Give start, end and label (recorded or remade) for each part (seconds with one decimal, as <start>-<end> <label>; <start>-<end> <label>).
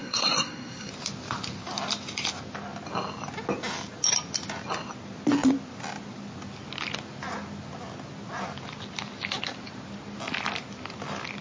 0.0-0.9 remade; 0.9-11.4 recorded